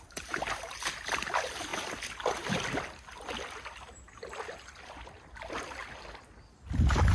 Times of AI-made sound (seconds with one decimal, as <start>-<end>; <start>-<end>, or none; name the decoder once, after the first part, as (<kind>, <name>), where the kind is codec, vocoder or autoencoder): none